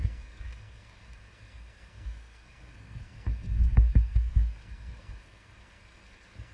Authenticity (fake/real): fake